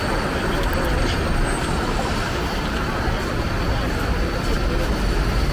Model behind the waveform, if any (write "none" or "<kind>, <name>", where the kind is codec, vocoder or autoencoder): none